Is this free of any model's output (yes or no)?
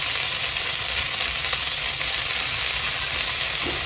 yes